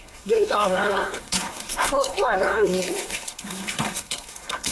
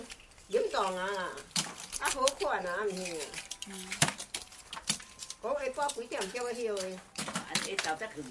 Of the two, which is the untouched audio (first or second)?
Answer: second